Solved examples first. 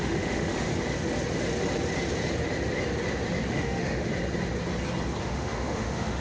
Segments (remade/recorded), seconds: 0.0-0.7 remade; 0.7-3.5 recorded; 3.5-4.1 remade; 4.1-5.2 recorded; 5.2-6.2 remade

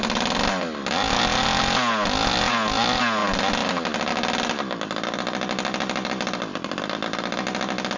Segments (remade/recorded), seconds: 0.0-8.0 recorded

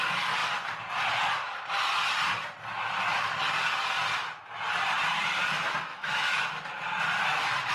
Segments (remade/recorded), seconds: 0.0-5.9 recorded; 5.9-6.4 remade; 6.4-7.7 recorded

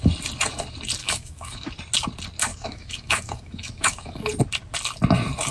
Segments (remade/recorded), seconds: 0.0-1.0 recorded; 1.0-1.7 remade; 1.7-2.5 recorded; 2.5-4.3 remade; 4.3-5.5 recorded

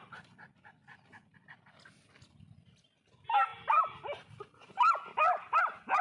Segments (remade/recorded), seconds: 0.0-6.0 recorded

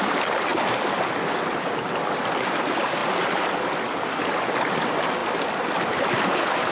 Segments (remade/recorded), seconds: 0.0-6.7 recorded

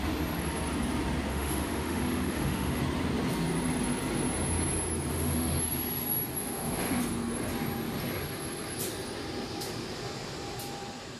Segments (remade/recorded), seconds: 0.0-1.3 recorded; 1.3-2.8 remade; 2.8-5.1 recorded; 5.1-5.6 remade; 5.6-6.4 recorded; 6.4-7.0 remade; 7.0-11.2 recorded

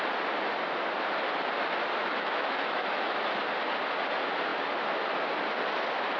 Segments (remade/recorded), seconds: 0.0-2.0 recorded; 2.0-3.4 remade; 3.4-6.2 recorded